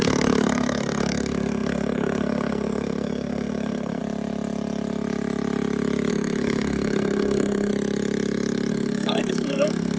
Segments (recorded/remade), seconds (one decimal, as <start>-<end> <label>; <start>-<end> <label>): 0.0-4.0 remade; 4.0-6.1 recorded; 6.1-7.7 remade; 7.7-8.7 recorded; 8.7-10.0 remade